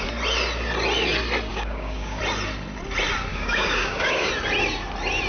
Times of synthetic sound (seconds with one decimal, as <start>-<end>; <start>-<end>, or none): 1.5-2.2; 3.3-4.3